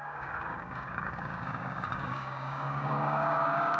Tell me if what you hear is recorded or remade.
remade